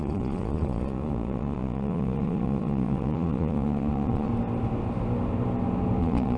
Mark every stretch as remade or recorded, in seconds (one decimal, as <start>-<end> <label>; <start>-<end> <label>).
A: 0.0-4.3 remade; 4.3-6.0 recorded; 6.0-6.4 remade